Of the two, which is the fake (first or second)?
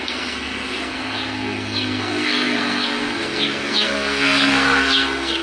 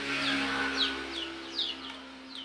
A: first